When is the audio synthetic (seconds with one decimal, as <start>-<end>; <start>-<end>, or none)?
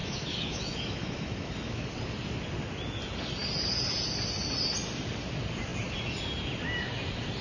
0.0-1.9